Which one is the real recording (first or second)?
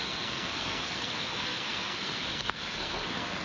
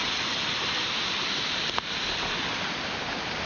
second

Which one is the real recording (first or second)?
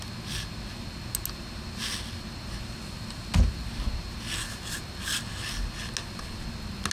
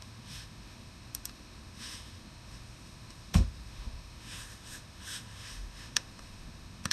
first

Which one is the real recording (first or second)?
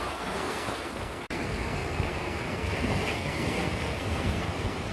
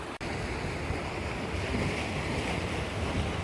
second